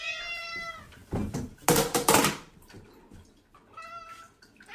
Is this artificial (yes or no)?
no